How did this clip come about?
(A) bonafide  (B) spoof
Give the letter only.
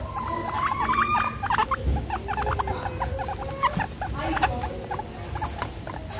A